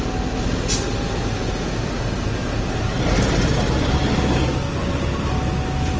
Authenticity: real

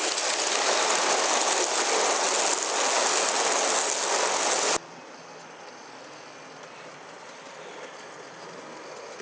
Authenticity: real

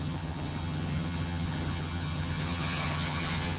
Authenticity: fake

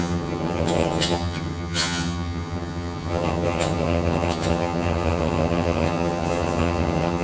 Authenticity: fake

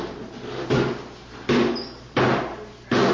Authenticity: real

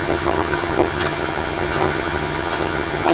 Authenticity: fake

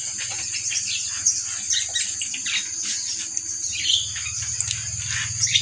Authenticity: real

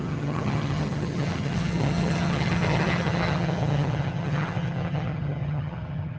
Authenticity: fake